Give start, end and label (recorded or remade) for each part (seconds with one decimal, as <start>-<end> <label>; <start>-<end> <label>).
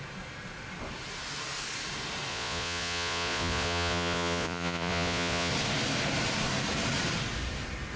0.0-2.3 recorded; 2.3-5.5 remade; 5.5-8.0 recorded